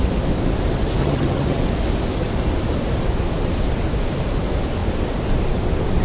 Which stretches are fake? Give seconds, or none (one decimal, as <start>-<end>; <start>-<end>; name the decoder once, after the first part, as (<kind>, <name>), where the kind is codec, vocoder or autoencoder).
1.0-1.6 (vocoder, HiFi-GAN)